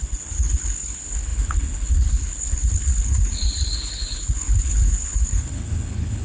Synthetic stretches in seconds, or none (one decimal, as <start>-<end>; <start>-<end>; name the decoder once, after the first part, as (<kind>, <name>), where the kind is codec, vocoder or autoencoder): 0.0-6.2 (codec, HILCodec)